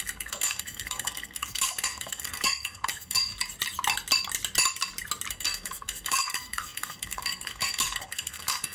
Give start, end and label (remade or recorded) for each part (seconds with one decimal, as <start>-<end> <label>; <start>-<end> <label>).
0.0-3.3 remade; 3.3-5.3 recorded; 5.3-8.7 remade